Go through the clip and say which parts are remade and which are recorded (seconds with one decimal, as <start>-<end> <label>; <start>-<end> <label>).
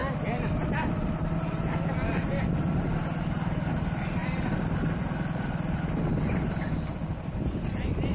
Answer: 0.0-8.1 recorded